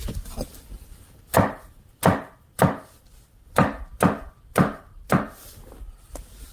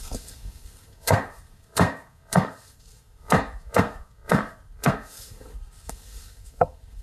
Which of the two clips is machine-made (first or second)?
second